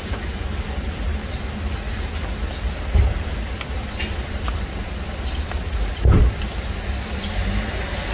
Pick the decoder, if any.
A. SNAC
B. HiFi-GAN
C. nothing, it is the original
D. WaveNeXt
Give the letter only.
C